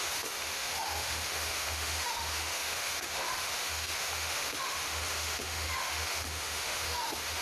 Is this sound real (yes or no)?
no